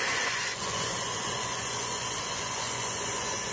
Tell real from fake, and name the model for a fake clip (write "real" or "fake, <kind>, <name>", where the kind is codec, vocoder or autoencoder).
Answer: fake, vocoder, Vocos